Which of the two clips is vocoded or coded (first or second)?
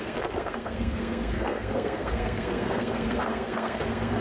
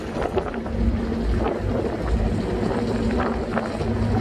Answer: first